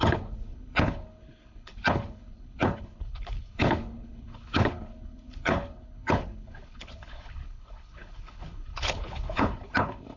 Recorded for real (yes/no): no